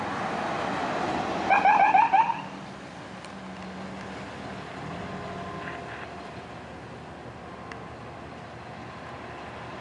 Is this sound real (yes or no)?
yes